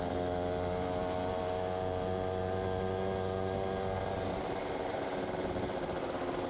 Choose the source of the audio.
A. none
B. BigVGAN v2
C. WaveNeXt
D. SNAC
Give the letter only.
A